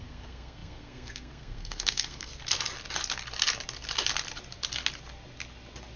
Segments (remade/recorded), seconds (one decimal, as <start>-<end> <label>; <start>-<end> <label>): 0.0-2.3 remade; 2.3-6.0 recorded

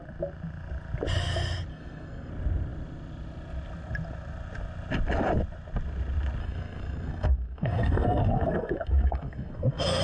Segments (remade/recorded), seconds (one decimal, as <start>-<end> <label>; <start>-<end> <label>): 0.0-1.7 recorded; 1.7-2.3 remade; 2.3-6.4 recorded; 6.4-10.0 remade

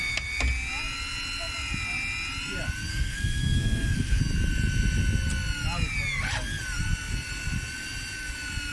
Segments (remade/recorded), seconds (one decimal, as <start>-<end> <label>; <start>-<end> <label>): 0.0-2.9 recorded; 2.9-4.2 remade; 4.2-8.7 recorded

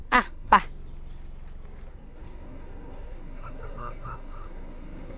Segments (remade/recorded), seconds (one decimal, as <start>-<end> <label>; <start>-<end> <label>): 0.0-0.6 remade; 0.6-1.9 recorded; 1.9-5.2 remade

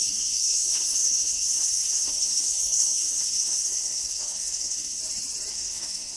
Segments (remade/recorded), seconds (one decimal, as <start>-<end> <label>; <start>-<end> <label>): 0.0-5.0 remade; 5.0-5.5 recorded; 5.5-6.2 remade

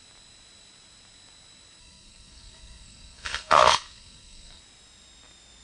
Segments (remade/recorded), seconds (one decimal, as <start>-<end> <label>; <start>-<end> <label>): 0.0-1.8 recorded; 1.8-4.6 remade; 4.6-5.6 recorded